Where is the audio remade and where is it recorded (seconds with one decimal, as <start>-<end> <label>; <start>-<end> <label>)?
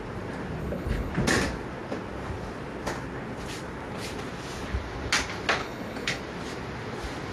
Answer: 0.0-0.6 recorded; 0.6-1.1 remade; 1.1-5.6 recorded; 5.6-6.2 remade; 6.2-7.3 recorded